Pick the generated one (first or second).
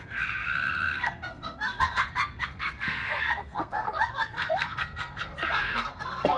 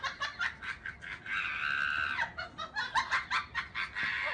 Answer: first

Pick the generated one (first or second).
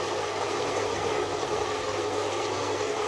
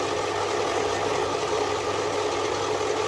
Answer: first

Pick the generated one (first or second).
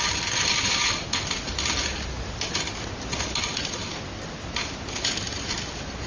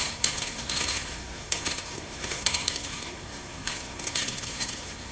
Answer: second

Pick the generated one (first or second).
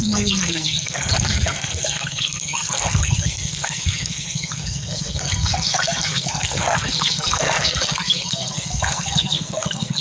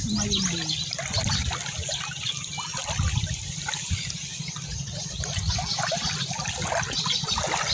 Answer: first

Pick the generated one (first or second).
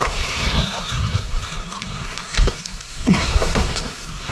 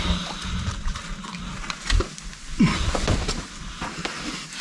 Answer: first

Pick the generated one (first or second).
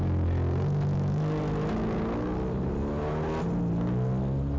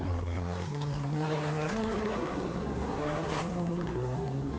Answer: second